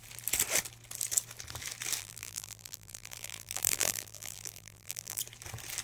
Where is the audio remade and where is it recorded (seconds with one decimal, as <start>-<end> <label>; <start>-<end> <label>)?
0.0-2.0 recorded; 2.0-5.2 remade; 5.2-5.8 recorded